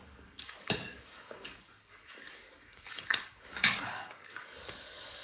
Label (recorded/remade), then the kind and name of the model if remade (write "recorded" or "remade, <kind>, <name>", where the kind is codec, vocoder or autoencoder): remade, codec, DAC